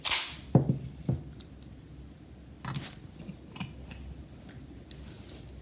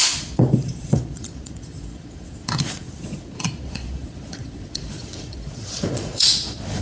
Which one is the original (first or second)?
first